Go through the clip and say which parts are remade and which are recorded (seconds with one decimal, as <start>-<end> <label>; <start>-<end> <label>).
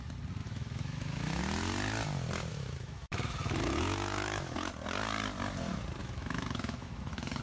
0.0-0.4 recorded; 0.4-1.4 remade; 1.4-2.5 recorded; 2.5-4.7 remade; 4.7-6.0 recorded; 6.0-7.4 remade